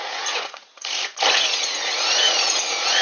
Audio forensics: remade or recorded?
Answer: remade